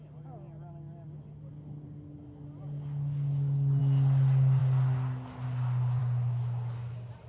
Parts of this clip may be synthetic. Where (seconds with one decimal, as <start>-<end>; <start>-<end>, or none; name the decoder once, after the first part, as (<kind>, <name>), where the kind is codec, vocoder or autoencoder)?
none

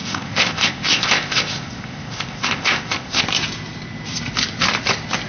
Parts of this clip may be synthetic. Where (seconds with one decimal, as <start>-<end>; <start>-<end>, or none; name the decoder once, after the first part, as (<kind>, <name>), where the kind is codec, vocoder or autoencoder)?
0.0-3.2 (codec, ZipCodec)

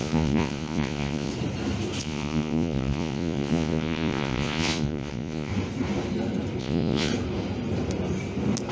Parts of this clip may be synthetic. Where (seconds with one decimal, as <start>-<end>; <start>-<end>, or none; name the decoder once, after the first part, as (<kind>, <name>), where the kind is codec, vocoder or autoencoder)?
0.0-1.3 (vocoder, Vocos); 2.0-5.5; 6.6-7.1

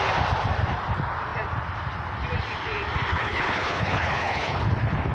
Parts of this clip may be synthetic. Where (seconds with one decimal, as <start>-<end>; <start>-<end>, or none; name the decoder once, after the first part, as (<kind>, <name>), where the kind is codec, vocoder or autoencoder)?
3.1-4.6 (codec, HILCodec)

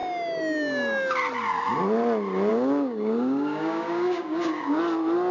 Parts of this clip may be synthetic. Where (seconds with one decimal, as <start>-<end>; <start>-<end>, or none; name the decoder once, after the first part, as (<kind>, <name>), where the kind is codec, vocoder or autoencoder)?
2.5-4.8 (codec, DAC)

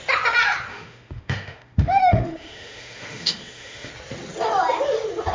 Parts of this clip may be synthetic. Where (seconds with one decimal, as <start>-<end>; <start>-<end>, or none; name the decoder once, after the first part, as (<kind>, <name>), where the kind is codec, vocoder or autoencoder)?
0.7-3.9 (autoencoder, DAC-VAE)